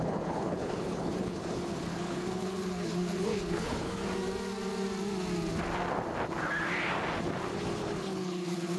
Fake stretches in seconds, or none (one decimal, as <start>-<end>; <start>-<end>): 0.0-4.0; 7.5-8.8